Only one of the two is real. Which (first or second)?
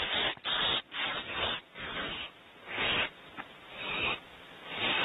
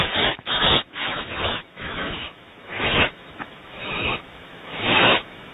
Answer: first